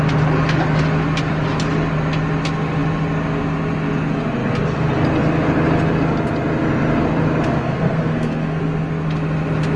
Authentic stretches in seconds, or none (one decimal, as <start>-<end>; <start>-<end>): 0.0-7.6; 8.6-9.8